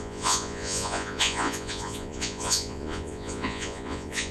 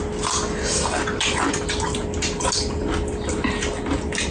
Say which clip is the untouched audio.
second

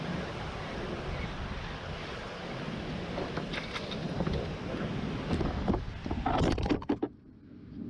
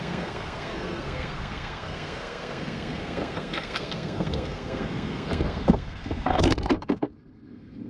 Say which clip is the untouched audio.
first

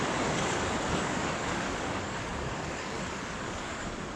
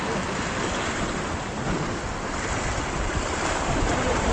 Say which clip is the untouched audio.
second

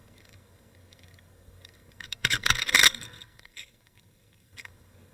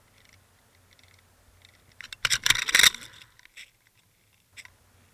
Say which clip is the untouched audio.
second